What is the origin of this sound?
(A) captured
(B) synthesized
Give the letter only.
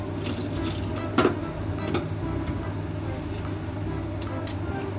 A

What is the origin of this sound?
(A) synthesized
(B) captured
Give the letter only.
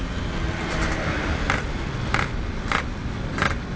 A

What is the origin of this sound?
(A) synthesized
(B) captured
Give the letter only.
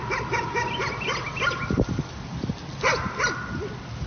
B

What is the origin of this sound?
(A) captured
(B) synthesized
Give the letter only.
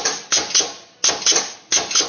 A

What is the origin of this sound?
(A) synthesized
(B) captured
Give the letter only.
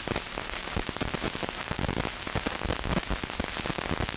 B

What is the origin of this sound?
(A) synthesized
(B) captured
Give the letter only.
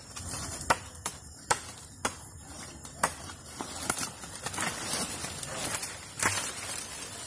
A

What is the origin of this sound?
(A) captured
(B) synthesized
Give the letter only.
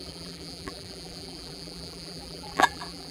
B